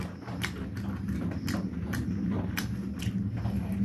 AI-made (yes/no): no